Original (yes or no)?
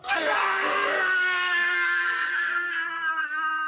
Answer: no